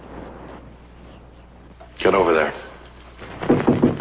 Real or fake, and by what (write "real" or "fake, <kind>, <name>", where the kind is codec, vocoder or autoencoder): real